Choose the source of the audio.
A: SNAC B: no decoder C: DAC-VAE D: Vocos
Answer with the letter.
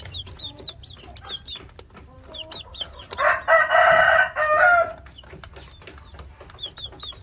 B